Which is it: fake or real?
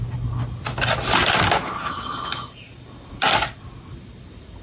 real